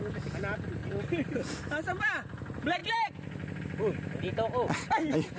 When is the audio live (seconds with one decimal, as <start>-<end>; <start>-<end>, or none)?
0.0-5.4